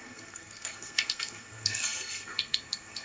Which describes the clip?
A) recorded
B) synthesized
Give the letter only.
B